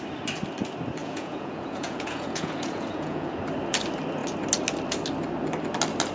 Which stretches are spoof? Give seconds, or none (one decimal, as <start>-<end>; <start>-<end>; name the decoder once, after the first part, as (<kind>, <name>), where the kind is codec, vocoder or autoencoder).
1.0-3.4 (vocoder, Vocos)